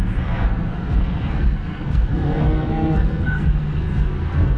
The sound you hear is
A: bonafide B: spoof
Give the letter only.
B